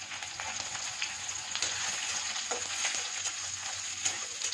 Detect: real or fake fake